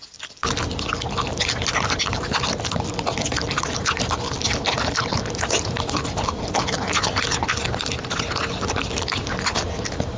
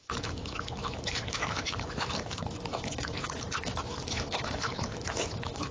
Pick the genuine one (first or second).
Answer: first